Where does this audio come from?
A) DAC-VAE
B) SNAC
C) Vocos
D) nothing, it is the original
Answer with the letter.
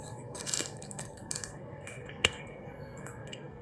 B